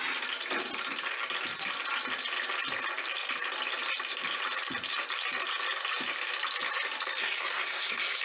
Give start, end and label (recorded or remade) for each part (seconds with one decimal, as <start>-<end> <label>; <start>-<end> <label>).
0.0-7.2 recorded; 7.2-8.2 remade